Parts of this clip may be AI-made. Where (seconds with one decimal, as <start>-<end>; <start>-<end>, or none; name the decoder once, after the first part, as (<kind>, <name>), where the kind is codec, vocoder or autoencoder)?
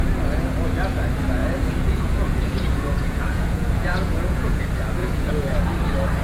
1.4-4.6 (vocoder, Vocos); 5.0-5.6